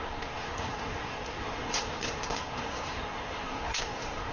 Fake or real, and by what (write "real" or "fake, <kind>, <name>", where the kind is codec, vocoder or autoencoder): fake, codec, SNAC